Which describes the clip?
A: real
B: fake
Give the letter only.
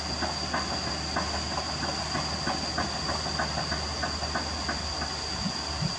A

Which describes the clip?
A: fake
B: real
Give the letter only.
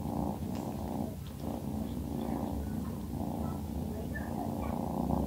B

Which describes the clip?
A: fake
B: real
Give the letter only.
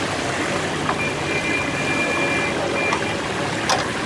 B